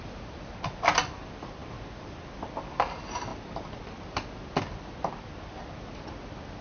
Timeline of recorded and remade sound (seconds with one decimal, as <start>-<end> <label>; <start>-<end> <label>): 0.0-6.6 recorded